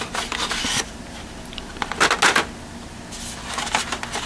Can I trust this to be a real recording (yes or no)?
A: yes